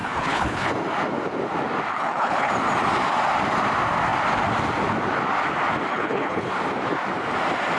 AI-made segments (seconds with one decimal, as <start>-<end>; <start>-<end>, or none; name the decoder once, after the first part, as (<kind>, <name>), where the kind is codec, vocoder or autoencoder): 0.0-0.7 (codec, HILCodec); 1.9-2.5; 5.9-6.5